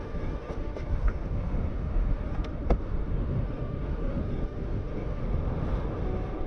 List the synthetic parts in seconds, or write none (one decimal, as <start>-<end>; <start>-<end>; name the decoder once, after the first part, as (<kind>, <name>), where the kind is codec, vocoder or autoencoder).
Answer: 0.0-5.2 (autoencoder, DAC-VAE)